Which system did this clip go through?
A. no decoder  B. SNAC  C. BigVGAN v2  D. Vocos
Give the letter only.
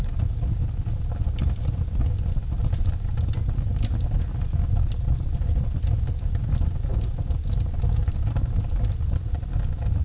A